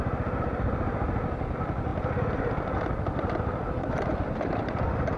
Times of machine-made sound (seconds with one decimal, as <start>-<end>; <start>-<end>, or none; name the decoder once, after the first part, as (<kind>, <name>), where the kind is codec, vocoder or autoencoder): none